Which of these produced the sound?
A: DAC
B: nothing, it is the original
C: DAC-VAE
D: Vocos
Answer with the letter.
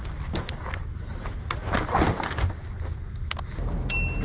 B